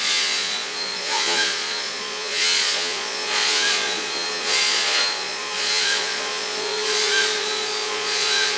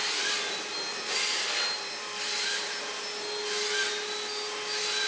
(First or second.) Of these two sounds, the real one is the second